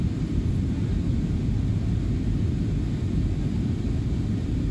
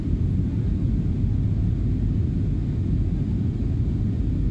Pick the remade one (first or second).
first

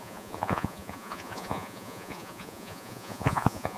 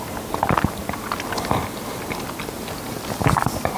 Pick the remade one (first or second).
first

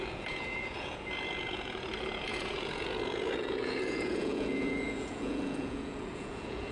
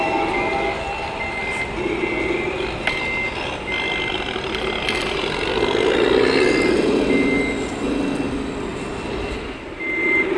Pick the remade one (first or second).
first